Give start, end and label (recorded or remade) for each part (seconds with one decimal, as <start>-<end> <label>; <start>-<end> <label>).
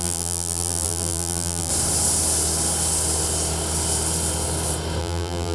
0.0-1.7 remade; 1.7-5.0 recorded; 5.0-5.5 remade